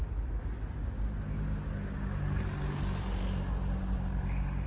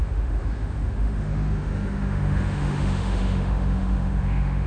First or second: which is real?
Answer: first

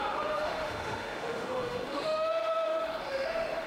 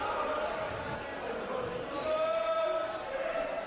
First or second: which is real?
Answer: second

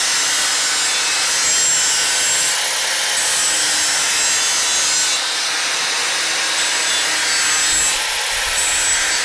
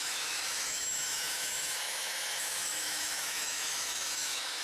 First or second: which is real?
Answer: first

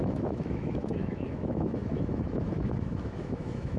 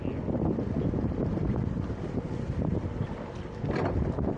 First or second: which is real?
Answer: second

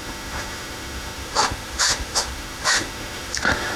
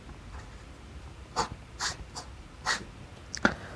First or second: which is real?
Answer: second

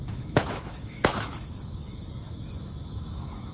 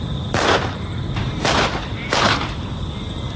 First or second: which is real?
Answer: second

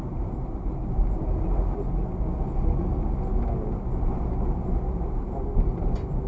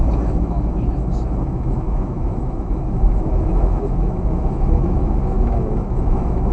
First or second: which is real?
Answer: first